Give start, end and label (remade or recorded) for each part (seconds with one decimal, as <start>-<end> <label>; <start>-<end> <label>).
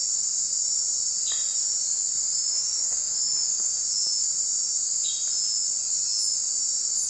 0.0-2.5 recorded; 2.5-3.8 remade; 3.8-7.1 recorded